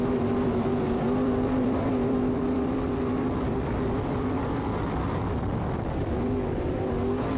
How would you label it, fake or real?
fake